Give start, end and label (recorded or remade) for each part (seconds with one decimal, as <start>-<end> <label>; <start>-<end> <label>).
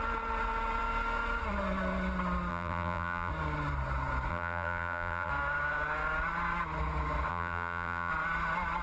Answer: 0.0-2.5 recorded; 2.5-3.3 remade; 3.3-4.3 recorded; 4.3-5.3 remade; 5.3-7.3 recorded; 7.3-8.1 remade; 8.1-8.8 recorded